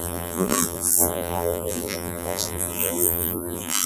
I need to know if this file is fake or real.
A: fake